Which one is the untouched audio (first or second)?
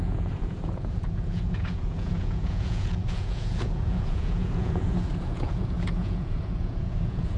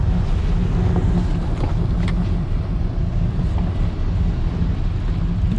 second